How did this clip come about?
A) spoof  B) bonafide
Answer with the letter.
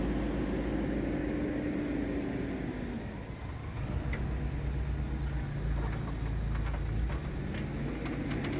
B